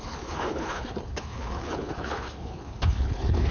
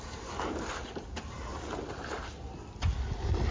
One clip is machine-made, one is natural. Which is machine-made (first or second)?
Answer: first